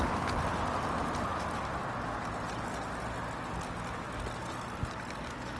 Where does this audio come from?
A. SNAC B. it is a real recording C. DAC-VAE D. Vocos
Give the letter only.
B